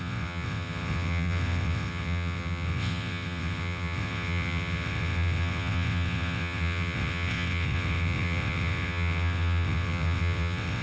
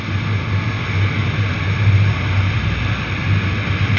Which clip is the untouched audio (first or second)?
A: second